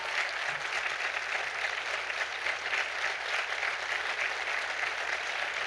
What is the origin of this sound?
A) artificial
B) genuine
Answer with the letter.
B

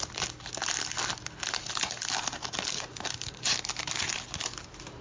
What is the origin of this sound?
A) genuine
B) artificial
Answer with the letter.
A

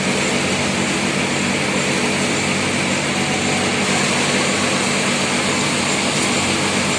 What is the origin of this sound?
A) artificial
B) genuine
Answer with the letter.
B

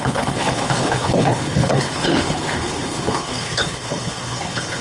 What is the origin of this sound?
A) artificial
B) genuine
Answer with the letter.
A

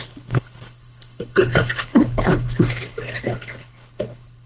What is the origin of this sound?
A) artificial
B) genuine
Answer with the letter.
A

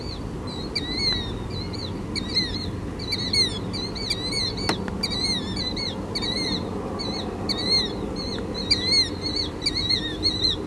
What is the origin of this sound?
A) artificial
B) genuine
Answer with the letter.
B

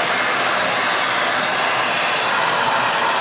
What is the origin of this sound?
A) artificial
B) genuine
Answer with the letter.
B